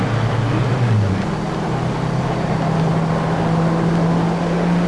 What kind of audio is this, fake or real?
real